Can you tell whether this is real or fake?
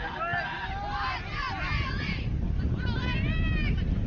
real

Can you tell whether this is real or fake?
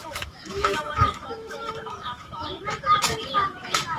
fake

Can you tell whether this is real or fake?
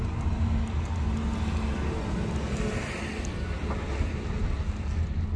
real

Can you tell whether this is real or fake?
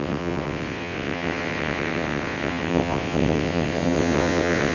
fake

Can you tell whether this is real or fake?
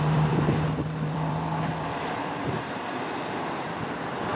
fake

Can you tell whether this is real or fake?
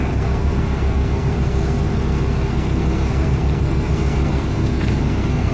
fake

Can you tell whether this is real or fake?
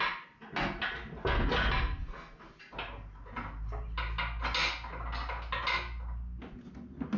real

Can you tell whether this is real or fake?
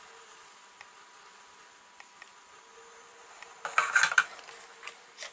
real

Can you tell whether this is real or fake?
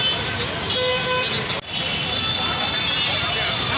real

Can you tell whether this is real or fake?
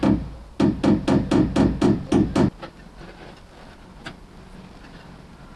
real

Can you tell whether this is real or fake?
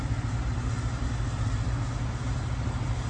real